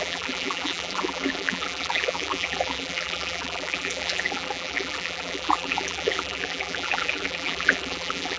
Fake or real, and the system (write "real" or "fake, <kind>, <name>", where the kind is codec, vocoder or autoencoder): fake, vocoder, BigVGAN v2